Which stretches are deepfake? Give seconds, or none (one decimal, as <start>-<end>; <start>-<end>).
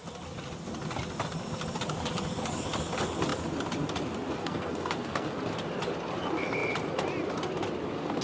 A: 4.4-5.3